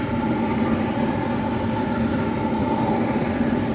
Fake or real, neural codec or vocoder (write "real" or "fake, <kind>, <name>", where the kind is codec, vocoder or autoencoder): real